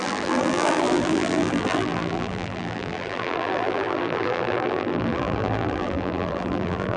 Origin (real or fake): fake